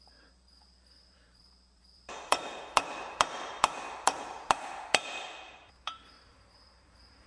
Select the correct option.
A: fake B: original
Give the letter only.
A